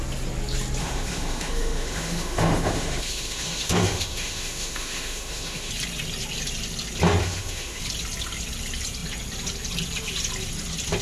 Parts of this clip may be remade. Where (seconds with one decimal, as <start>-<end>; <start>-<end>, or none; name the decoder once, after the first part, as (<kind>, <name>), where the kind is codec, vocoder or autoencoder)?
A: 0.8-5.7 (autoencoder, DAC-VAE); 7.2-7.8